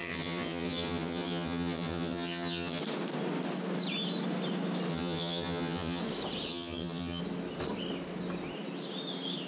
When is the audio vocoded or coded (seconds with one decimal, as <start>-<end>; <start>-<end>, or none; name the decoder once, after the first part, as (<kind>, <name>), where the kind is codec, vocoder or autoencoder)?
0.0-2.8 (vocoder, HiFi-GAN); 4.9-6.0; 6.5-7.2